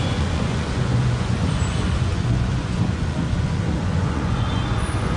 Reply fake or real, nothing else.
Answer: fake